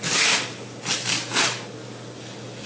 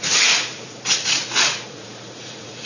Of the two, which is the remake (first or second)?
second